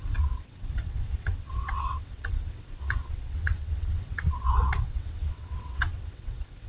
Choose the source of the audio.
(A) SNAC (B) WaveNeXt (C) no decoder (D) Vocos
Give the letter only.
B